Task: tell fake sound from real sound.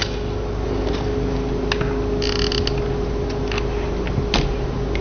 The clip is real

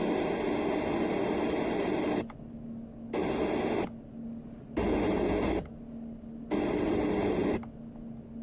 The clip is real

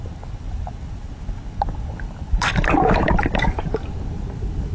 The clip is real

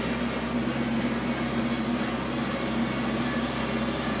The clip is real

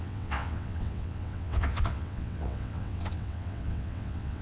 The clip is fake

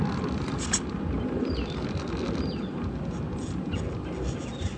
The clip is real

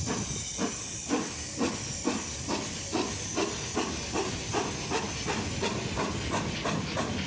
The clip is real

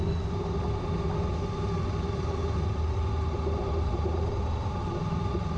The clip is real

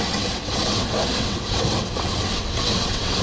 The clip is fake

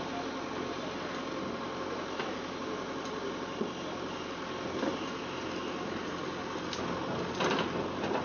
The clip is real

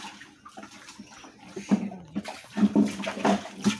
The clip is real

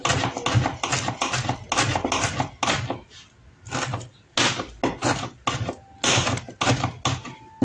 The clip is real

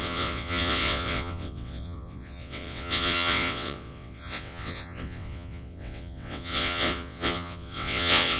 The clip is fake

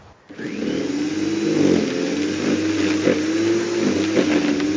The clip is real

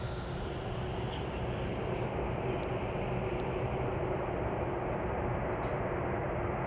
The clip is real